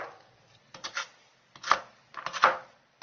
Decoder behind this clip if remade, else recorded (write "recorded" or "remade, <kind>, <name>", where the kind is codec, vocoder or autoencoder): recorded